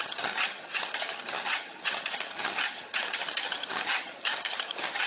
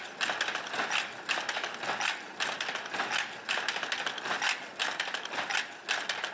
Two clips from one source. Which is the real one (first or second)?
second